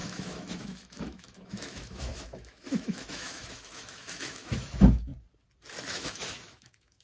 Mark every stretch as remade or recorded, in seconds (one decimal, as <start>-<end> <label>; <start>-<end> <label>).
0.0-5.1 remade; 5.1-5.8 recorded; 5.8-7.0 remade